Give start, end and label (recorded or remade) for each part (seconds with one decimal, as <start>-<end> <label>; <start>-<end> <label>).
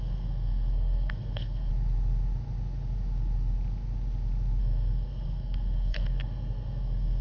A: 0.0-1.7 remade; 1.7-4.6 recorded; 4.6-7.2 remade